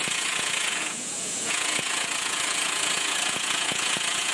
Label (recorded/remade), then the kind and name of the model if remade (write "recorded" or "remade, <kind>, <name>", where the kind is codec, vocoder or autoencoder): remade, vocoder, Vocos